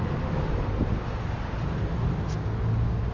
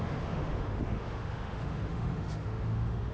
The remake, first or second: second